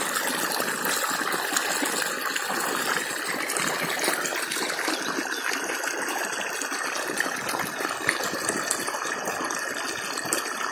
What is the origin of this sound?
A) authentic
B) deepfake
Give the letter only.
A